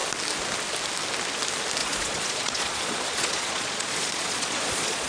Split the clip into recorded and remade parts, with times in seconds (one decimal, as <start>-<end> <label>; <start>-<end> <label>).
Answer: 0.0-1.8 recorded; 1.8-5.1 remade